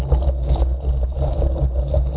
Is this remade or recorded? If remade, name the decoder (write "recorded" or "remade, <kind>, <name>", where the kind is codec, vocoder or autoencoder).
recorded